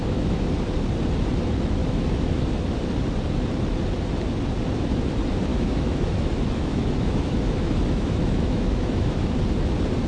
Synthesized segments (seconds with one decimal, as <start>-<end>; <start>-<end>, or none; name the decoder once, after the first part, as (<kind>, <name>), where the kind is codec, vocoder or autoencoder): 0.0-0.5 (autoencoder, DAC-VAE); 1.8-2.8; 5.5-9.3